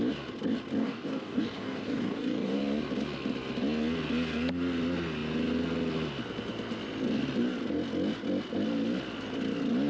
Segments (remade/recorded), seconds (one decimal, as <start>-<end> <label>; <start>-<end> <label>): 0.0-0.8 recorded; 0.8-2.6 remade; 2.6-9.9 recorded